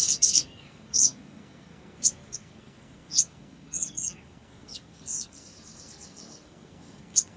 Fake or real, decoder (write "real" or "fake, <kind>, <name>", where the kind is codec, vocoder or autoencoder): fake, codec, SNAC